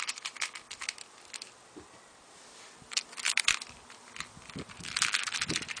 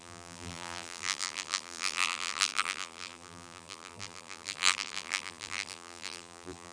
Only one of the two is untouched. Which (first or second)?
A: first